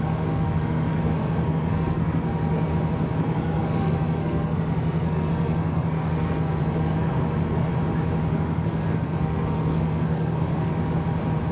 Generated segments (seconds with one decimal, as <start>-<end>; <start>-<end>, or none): 0.0-2.7; 3.2-7.7; 8.3-10.7